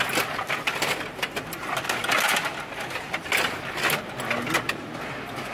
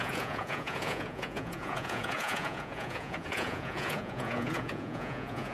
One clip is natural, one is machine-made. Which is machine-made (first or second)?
second